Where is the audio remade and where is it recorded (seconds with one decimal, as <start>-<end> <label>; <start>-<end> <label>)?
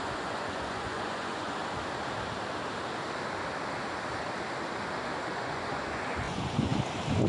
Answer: 0.0-1.6 remade; 1.6-5.3 recorded; 5.3-6.7 remade; 6.7-7.3 recorded